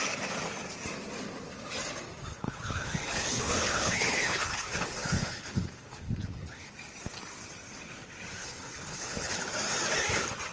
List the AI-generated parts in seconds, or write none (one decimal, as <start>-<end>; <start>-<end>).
2.3-6.7; 8.4-9.4